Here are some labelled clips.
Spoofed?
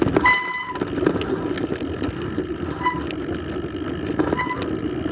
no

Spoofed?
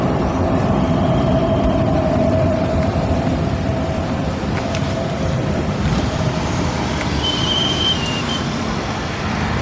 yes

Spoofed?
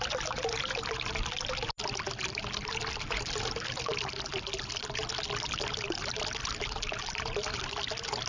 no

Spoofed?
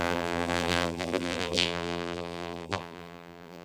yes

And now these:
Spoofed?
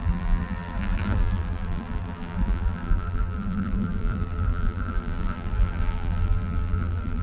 yes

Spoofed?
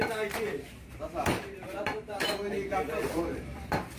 yes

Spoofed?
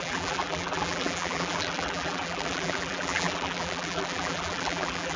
yes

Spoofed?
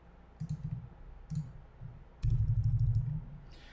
no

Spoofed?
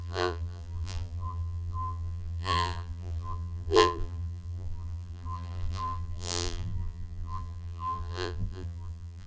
yes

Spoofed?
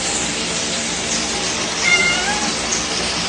yes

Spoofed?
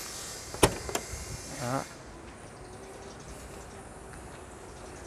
no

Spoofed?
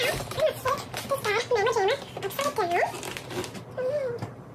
no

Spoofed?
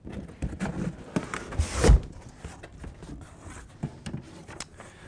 no